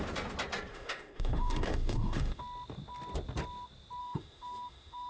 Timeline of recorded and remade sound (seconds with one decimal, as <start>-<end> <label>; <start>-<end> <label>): 0.0-0.7 recorded; 0.7-2.4 remade; 2.4-4.0 recorded; 4.0-5.1 remade

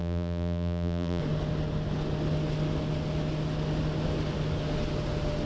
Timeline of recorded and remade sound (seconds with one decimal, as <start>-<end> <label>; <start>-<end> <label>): 0.0-1.2 remade; 1.2-5.5 recorded

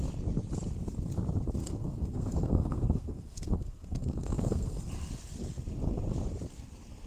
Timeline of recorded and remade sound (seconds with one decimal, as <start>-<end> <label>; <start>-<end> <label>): 0.0-1.6 recorded; 1.6-4.9 remade; 4.9-7.1 recorded

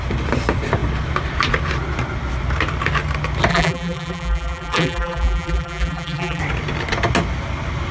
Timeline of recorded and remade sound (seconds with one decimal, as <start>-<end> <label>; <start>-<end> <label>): 0.0-3.5 recorded; 3.5-6.4 remade; 6.4-7.9 recorded

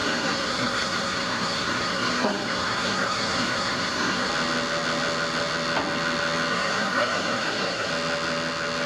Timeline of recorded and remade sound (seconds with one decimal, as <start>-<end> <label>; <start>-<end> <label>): 0.0-4.3 remade; 4.3-6.5 recorded; 6.5-7.9 remade; 7.9-8.9 recorded

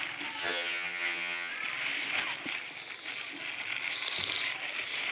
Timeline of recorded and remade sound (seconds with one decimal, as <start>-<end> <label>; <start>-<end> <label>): 0.0-0.4 recorded; 0.4-1.5 remade; 1.5-5.1 recorded